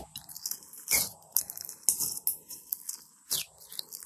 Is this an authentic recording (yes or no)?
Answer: yes